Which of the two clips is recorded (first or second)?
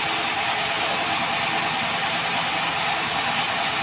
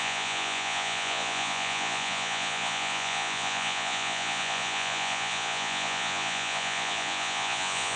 first